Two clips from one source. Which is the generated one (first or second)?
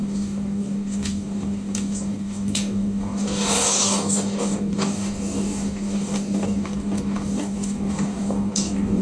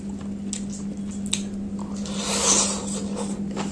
first